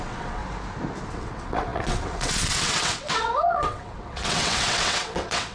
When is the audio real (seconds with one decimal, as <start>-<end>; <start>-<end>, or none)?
0.4-1.1